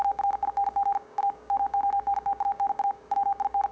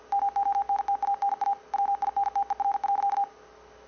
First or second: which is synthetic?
first